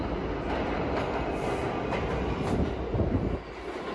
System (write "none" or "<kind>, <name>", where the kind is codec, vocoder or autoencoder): none